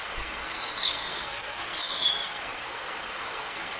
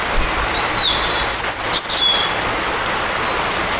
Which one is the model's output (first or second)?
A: first